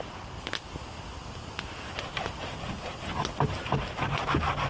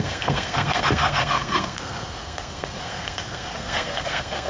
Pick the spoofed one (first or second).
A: second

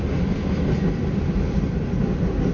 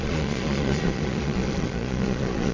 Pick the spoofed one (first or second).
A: second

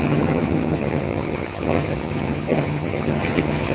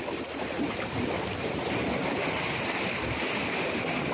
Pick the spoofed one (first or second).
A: first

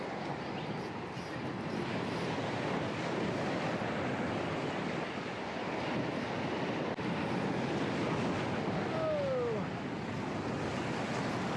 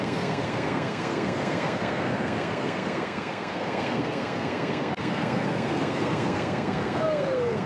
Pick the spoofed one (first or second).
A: second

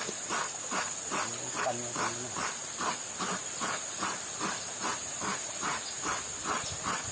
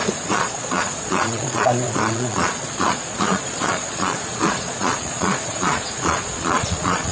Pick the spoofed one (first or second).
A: second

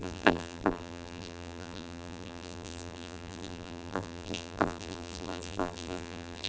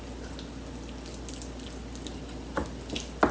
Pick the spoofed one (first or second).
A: first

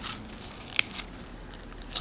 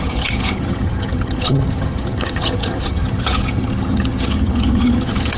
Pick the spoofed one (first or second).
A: second